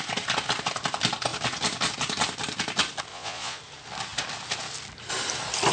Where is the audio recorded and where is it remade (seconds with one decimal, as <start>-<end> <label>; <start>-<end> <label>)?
0.0-3.1 recorded; 3.1-3.6 remade; 3.6-5.7 recorded